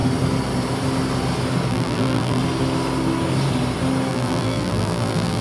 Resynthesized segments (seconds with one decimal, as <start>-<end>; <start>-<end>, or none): 1.7-2.4; 4.1-5.4